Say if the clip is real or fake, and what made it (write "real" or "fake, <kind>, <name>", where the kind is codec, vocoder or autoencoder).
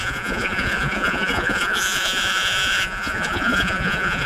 fake, vocoder, Vocos